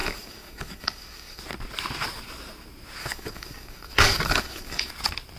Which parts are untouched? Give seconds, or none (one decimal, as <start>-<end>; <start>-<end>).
1.4-3.0; 4.9-5.4